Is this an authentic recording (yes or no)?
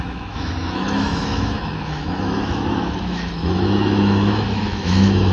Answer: no